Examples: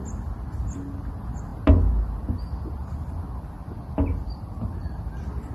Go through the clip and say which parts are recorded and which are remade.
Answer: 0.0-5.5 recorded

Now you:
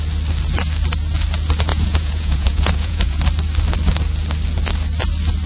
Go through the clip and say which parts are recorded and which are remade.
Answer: 0.0-1.7 recorded; 1.7-3.2 remade; 3.2-5.5 recorded

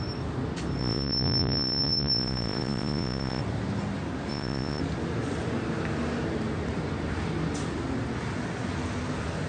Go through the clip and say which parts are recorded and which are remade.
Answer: 0.0-0.8 recorded; 0.8-3.4 remade; 3.4-4.3 recorded; 4.3-4.8 remade; 4.8-9.5 recorded

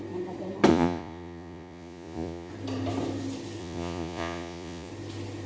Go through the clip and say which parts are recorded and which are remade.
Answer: 0.0-0.7 recorded; 0.7-2.5 remade; 2.5-3.6 recorded; 3.6-4.9 remade; 4.9-5.5 recorded

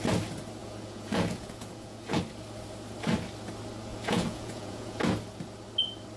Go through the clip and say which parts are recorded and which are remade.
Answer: 0.0-0.6 recorded; 0.6-2.2 remade; 2.2-3.9 recorded; 3.9-5.0 remade; 5.0-6.2 recorded